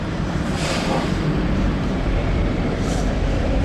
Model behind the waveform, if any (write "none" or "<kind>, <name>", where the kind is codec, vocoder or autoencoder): vocoder, BigVGAN v2